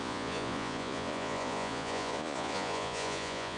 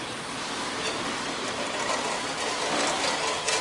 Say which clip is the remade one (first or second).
first